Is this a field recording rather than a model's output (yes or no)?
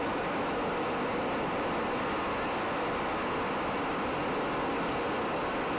yes